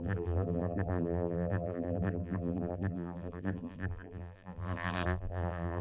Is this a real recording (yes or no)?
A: no